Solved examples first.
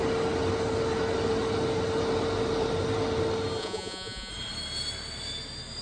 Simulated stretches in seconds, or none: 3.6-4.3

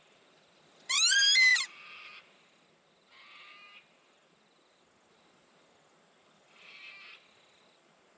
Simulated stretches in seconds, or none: 0.0-8.2

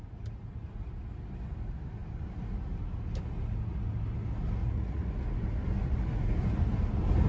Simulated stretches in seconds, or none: 4.6-5.1

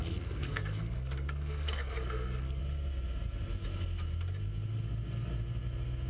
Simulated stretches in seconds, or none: 0.0-2.6

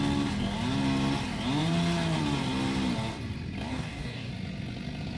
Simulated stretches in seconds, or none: 3.7-4.3

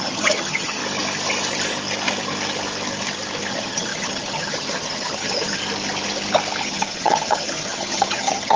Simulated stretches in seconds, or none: 0.0-0.8; 3.5-5.6; 6.6-8.6